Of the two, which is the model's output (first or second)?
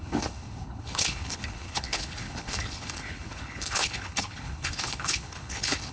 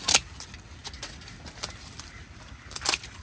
first